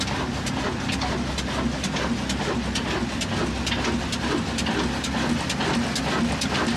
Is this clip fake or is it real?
real